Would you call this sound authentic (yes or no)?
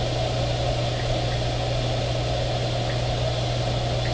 yes